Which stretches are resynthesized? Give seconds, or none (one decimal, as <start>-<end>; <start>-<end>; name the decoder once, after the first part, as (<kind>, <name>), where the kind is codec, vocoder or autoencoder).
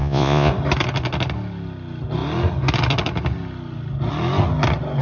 0.0-0.5 (vocoder, Vocos)